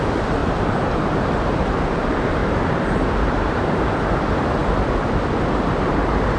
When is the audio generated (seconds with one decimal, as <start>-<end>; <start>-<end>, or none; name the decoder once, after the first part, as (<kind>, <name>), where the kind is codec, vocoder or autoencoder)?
0.4-1.8 (vocoder, BigVGAN v2); 2.4-4.0